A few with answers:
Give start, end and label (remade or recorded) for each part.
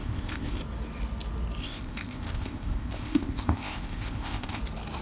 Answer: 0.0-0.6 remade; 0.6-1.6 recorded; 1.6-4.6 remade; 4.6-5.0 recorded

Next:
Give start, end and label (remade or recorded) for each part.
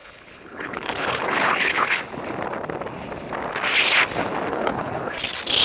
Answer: 0.0-2.0 remade; 2.0-4.5 recorded; 4.5-5.1 remade; 5.1-5.6 recorded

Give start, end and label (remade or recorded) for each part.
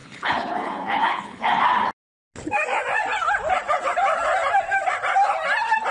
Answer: 0.0-1.5 remade; 1.5-5.9 recorded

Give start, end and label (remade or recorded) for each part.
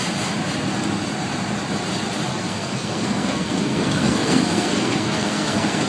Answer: 0.0-2.3 recorded; 2.3-5.9 remade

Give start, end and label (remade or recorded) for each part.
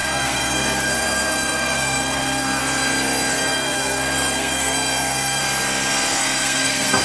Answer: 0.0-2.6 remade; 2.6-3.3 recorded; 3.3-5.4 remade; 5.4-6.2 recorded; 6.2-7.0 remade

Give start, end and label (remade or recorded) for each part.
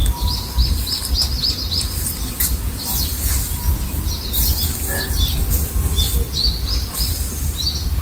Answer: 0.0-8.0 recorded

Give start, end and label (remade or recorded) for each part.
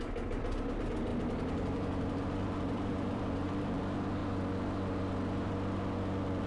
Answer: 0.0-1.1 recorded; 1.1-3.8 remade; 3.8-6.5 recorded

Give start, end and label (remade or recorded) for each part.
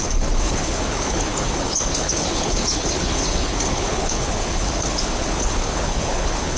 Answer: 0.0-6.6 remade